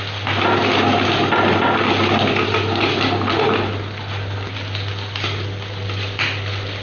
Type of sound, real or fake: fake